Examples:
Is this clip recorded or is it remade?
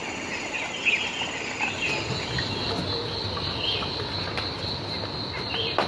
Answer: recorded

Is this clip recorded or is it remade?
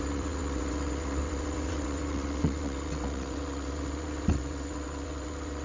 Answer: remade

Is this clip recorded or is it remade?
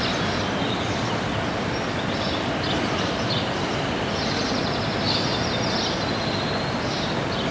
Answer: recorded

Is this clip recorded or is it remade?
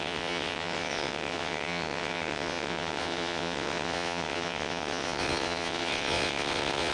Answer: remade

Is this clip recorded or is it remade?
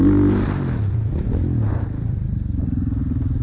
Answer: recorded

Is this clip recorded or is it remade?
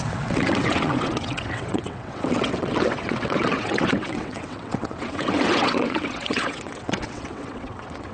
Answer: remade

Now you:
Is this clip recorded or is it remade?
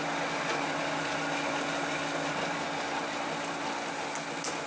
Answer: recorded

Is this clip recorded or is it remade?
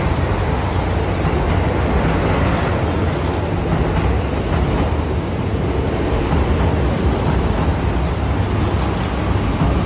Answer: recorded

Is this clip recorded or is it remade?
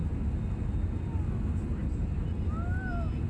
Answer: recorded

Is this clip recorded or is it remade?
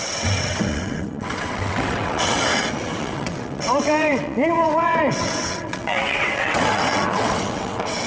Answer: remade